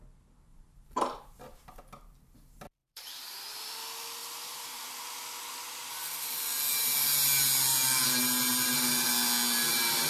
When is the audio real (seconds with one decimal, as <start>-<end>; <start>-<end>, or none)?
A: 0.0-0.5; 1.8-2.8; 3.7-4.2; 4.8-10.1